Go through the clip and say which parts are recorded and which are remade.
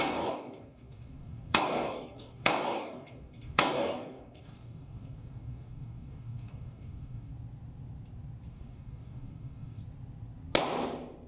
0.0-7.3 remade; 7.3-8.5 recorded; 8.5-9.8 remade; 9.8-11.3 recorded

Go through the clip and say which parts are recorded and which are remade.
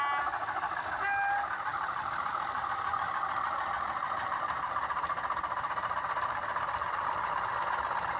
0.0-8.2 recorded